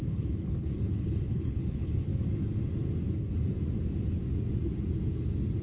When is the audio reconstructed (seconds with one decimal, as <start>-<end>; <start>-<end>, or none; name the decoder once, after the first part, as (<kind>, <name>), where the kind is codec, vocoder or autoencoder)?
0.0-2.1 (codec, HILCodec)